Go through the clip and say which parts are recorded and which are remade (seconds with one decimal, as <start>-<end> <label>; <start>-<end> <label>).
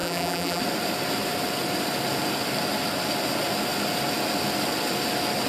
0.0-0.6 remade; 0.6-5.5 recorded